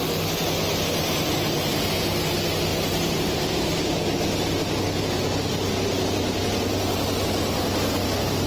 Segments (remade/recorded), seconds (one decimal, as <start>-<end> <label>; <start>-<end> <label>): 0.0-2.7 recorded; 2.7-3.9 remade; 3.9-8.5 recorded